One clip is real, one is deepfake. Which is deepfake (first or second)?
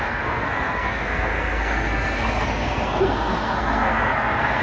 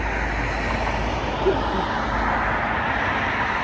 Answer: first